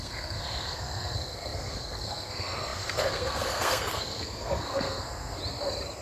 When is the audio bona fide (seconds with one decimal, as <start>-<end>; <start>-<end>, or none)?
5.4-6.0